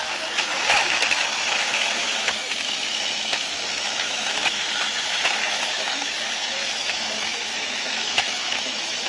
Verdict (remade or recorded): remade